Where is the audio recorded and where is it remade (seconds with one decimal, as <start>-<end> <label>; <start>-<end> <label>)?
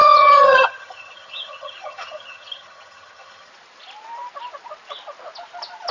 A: 0.0-3.5 remade; 3.5-5.9 recorded